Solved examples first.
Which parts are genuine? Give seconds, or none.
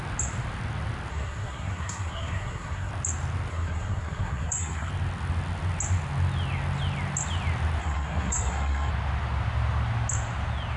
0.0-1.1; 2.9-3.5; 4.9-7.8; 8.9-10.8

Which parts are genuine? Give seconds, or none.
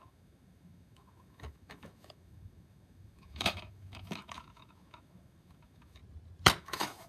6.0-6.6